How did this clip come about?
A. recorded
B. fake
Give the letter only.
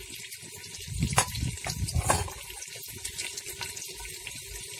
A